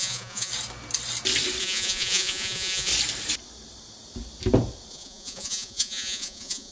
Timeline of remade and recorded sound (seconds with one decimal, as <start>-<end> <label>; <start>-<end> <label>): 0.0-0.5 remade; 0.5-1.6 recorded; 1.6-2.9 remade; 2.9-4.9 recorded; 4.9-6.7 remade